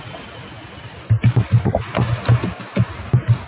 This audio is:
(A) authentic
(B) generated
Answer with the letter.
A